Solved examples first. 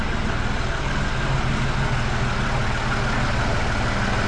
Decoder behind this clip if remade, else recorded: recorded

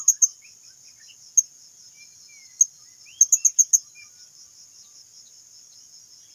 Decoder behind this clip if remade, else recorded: recorded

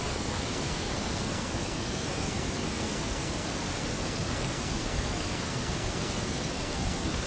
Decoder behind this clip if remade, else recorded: remade, codec, SNAC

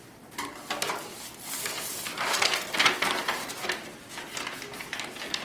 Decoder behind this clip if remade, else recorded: recorded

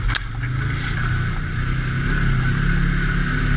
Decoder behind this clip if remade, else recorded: recorded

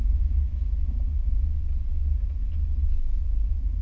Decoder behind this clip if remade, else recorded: recorded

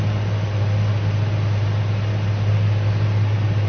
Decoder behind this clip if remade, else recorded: recorded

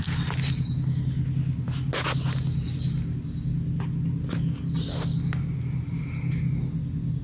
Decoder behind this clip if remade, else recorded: recorded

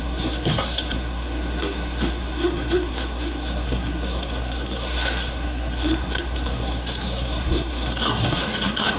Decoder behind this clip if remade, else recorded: remade, codec, SNAC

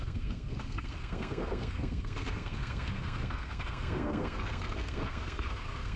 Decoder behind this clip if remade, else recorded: remade, codec, SNAC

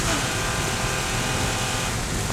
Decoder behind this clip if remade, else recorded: recorded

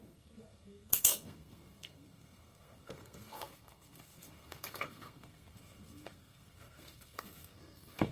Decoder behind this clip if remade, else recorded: remade, codec, SNAC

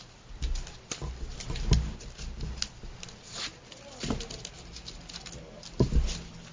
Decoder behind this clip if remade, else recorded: recorded